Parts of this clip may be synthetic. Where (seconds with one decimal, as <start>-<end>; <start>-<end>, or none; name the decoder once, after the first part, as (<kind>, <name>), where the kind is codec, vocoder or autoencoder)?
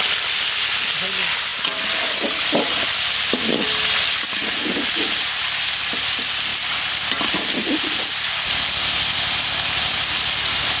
1.5-2.4 (vocoder, BigVGAN v2); 6.5-8.6